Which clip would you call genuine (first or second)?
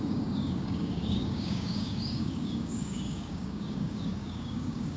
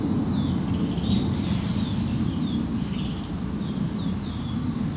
second